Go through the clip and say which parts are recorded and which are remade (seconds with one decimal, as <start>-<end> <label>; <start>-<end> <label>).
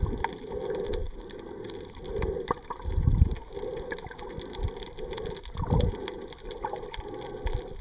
0.0-7.8 recorded